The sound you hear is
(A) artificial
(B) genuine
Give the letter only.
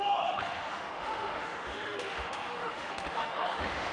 A